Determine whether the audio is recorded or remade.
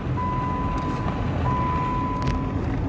recorded